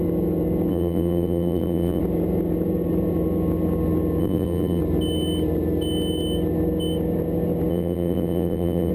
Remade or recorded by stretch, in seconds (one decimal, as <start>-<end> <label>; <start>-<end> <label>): 0.0-0.7 recorded; 0.7-2.0 remade; 2.0-4.2 recorded; 4.2-4.8 remade; 4.8-7.7 recorded; 7.7-8.9 remade